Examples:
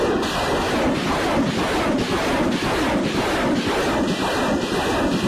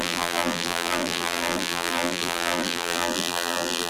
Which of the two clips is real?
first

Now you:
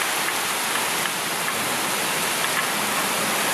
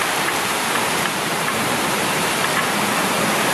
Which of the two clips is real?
first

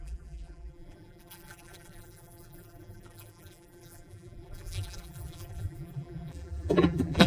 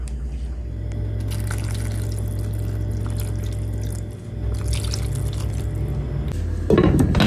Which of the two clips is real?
second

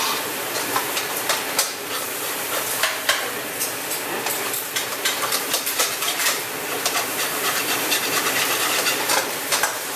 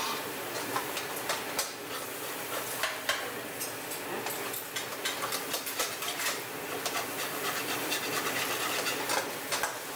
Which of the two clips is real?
second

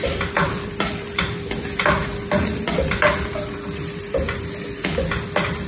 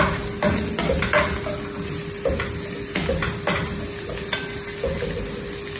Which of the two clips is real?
second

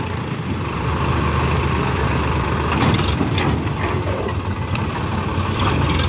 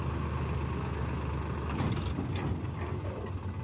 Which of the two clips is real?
second